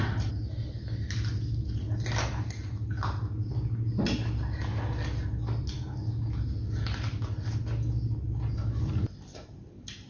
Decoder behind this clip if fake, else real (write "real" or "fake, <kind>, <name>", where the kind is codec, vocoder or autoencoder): real